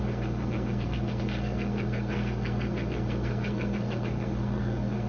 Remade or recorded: remade